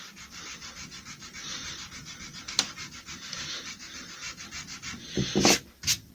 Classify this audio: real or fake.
real